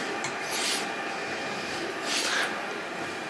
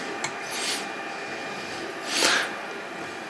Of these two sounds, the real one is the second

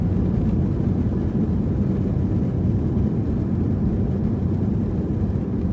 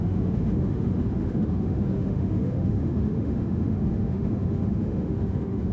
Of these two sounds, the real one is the first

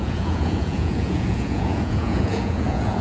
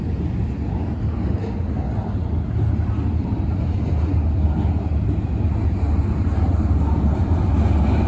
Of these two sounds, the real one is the second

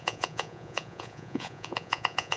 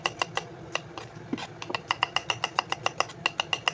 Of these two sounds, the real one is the second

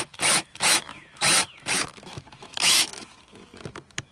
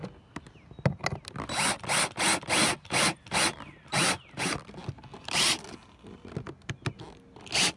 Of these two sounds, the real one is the second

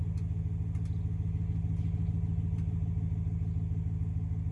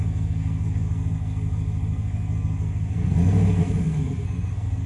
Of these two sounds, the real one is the first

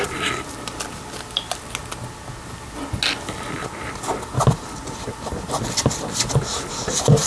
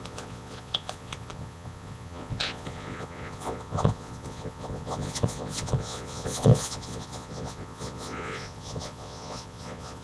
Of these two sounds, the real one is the first